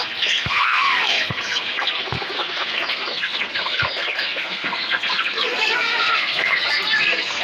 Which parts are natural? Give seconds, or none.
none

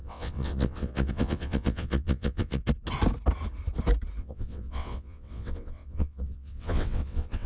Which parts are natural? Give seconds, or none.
2.6-4.2

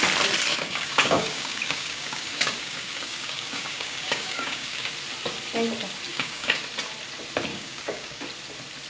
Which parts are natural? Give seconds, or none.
0.0-0.5; 4.9-6.1; 6.6-7.5; 8.2-8.9